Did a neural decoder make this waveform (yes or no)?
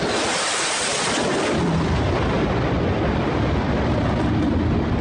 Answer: no